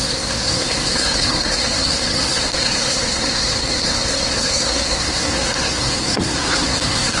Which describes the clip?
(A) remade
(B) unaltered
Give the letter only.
A